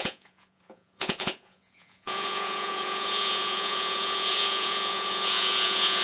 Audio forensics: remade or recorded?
remade